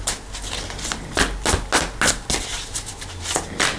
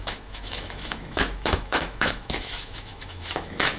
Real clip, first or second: first